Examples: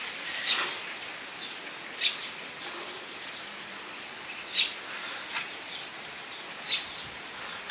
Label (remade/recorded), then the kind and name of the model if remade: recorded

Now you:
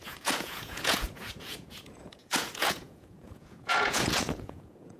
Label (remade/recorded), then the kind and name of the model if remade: remade, vocoder, Vocos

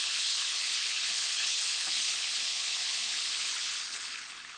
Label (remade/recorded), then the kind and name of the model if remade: remade, codec, HILCodec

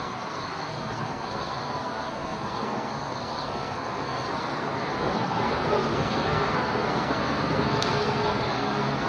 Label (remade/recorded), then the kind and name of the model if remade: remade, codec, SNAC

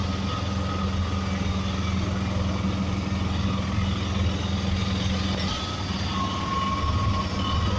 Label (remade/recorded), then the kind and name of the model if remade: recorded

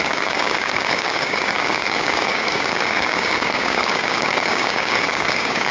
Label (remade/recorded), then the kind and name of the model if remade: remade, codec, DAC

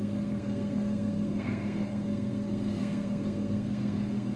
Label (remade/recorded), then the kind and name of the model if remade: remade, codec, SNAC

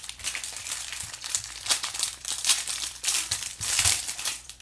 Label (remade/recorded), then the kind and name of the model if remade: remade, vocoder, BigVGAN v2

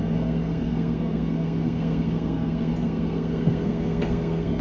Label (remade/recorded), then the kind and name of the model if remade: remade, codec, SNAC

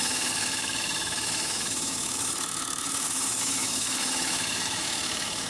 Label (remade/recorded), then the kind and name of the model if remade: remade, autoencoder, DAC-VAE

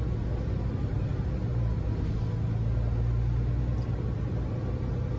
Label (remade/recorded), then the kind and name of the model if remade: recorded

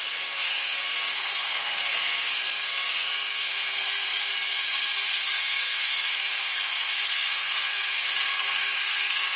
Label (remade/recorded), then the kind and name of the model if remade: remade, codec, SNAC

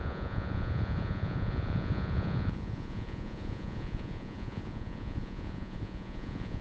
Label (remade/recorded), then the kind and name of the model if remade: remade, vocoder, Vocos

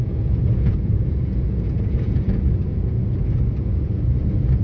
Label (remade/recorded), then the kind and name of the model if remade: remade, vocoder, Vocos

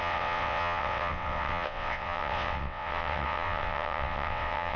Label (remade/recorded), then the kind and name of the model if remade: remade, vocoder, WaveNeXt